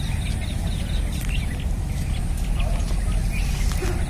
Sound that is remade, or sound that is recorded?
recorded